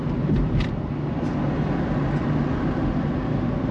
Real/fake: real